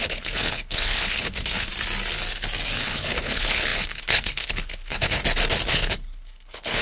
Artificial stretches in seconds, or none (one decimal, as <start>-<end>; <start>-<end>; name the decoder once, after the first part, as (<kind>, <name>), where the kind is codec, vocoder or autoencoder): 0.0-1.7 (codec, HILCodec); 2.8-5.2; 5.7-6.8

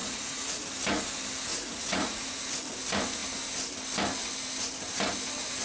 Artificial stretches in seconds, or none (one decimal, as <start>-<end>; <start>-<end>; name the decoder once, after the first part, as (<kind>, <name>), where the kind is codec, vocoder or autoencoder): 0.0-0.6 (vocoder, Vocos); 1.5-2.4